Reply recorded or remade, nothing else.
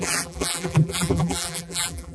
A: remade